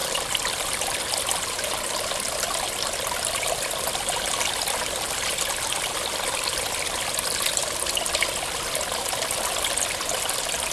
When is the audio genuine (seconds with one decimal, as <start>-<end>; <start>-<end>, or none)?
1.0-10.7